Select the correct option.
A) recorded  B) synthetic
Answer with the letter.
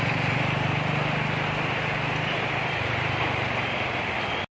A